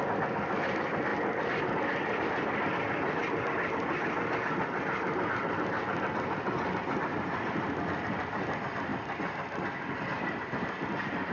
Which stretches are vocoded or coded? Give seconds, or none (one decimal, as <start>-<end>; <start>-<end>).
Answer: 1.1-1.6